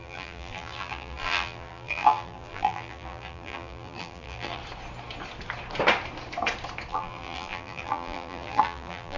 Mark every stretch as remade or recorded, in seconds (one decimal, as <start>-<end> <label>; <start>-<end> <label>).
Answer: 0.0-4.6 remade; 4.6-6.9 recorded; 6.9-9.2 remade